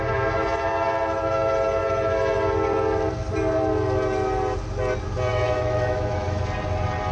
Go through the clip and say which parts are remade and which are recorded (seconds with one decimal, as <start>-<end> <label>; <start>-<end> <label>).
0.0-5.3 recorded; 5.3-6.4 remade; 6.4-7.1 recorded